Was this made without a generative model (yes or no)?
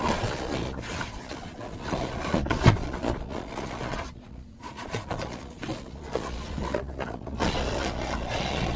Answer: no